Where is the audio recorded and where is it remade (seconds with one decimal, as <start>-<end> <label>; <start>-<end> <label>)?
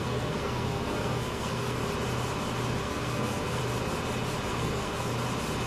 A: 0.0-1.8 remade; 1.8-2.8 recorded; 2.8-3.6 remade; 3.6-4.5 recorded; 4.5-5.1 remade; 5.1-5.7 recorded